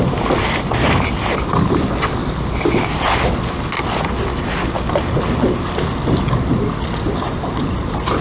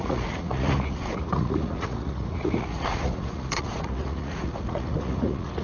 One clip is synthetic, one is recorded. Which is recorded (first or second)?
first